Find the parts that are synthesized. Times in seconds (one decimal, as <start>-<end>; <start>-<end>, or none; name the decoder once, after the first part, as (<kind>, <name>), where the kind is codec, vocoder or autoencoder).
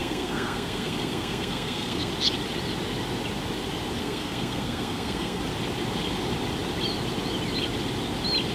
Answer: 0.0-2.1 (codec, SNAC); 4.0-5.4